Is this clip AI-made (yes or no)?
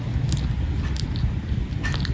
no